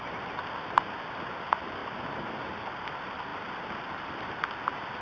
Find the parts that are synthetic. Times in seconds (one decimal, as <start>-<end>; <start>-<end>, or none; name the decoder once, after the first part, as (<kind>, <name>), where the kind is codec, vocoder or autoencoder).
none